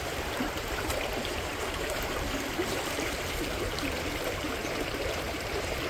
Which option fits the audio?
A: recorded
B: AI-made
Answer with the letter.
B